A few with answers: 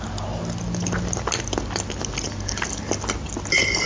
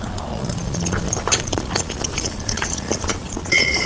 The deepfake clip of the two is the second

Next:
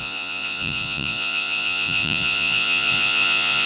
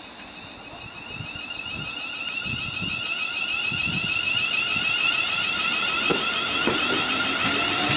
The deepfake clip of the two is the first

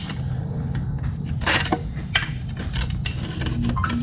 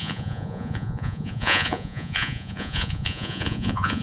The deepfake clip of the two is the second